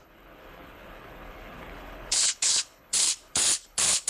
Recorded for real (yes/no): no